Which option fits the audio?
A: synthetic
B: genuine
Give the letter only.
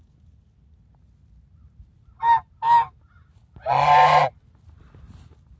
B